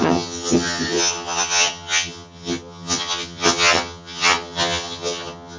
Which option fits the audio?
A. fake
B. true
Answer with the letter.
A